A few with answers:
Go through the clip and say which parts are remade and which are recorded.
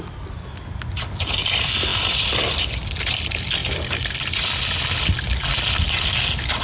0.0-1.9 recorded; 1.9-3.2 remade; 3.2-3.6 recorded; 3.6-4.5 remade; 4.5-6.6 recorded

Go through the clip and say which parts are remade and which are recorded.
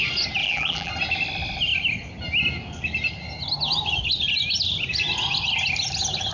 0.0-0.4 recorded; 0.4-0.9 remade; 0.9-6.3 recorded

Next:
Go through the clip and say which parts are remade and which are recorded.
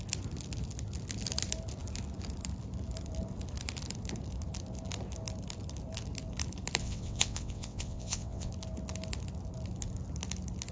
0.0-6.8 recorded; 6.8-8.5 remade; 8.5-10.7 recorded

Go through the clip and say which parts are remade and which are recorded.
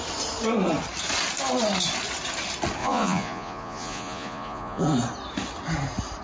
0.0-2.8 recorded; 2.8-4.8 remade; 4.8-6.2 recorded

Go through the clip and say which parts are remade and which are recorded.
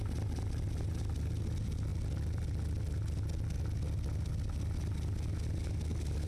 0.0-6.3 recorded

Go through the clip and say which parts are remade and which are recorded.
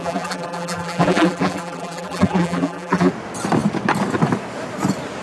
0.0-3.1 remade; 3.1-5.2 recorded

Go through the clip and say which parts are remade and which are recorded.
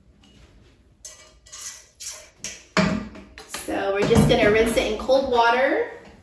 0.0-1.6 recorded; 1.6-2.3 remade; 2.3-6.2 recorded